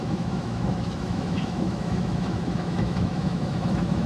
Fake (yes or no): yes